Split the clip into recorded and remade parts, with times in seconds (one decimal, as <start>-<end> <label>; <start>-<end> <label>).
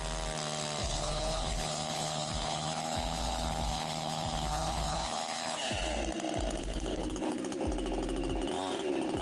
0.0-0.8 recorded; 0.8-5.7 remade; 5.7-6.6 recorded; 6.6-7.4 remade; 7.4-9.2 recorded